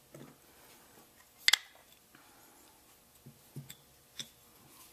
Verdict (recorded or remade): recorded